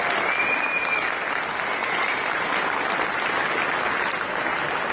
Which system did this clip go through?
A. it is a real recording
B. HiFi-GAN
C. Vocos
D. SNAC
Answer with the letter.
A